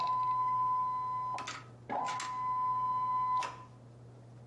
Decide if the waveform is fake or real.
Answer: real